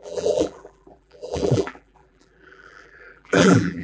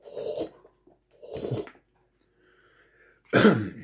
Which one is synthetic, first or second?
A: first